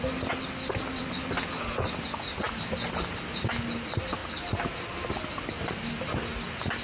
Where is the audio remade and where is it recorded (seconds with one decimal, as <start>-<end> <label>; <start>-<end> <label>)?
0.0-6.8 recorded